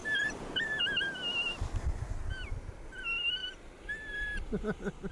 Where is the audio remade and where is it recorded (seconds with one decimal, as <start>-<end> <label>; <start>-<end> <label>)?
0.0-0.8 remade; 0.8-5.1 recorded